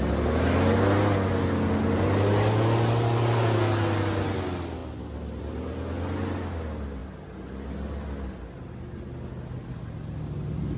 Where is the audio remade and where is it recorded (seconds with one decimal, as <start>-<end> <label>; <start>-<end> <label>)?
0.0-10.8 recorded